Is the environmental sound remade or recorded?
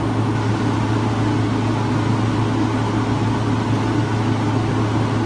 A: recorded